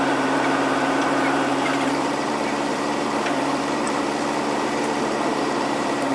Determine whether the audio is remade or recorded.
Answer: remade